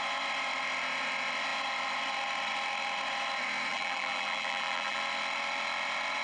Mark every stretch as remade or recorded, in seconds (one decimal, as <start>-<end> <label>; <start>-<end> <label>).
0.0-3.7 recorded; 3.7-5.0 remade; 5.0-6.2 recorded